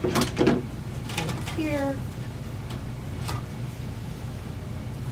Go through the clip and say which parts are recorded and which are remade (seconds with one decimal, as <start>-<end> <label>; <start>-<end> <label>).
0.0-3.5 recorded; 3.5-4.5 remade; 4.5-5.1 recorded